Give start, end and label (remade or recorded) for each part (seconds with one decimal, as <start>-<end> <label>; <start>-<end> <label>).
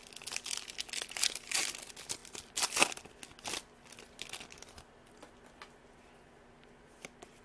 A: 0.0-2.2 recorded; 2.2-3.0 remade; 3.0-7.4 recorded